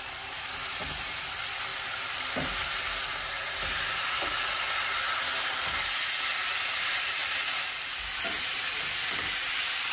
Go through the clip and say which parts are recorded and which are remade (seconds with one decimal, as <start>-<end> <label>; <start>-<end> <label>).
0.0-9.9 recorded